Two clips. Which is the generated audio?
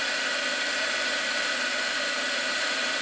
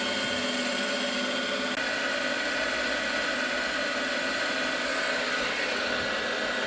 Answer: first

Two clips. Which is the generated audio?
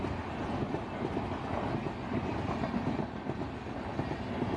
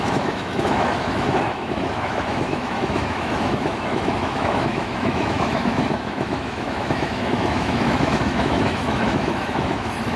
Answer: second